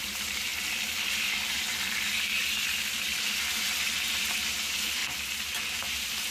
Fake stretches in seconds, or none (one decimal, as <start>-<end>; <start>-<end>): 0.0-0.5; 3.6-5.0; 5.7-6.3

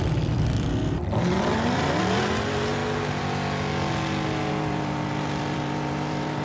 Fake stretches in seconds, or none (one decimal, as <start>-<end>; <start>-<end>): 0.0-2.8; 4.5-6.4

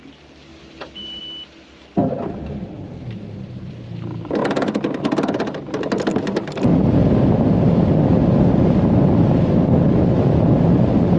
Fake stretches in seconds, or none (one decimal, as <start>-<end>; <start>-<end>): 0.5-1.2; 2.0-3.7

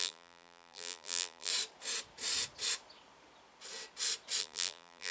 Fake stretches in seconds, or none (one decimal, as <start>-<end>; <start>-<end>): 0.0-1.5; 4.4-5.1